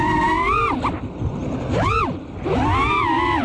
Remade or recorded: recorded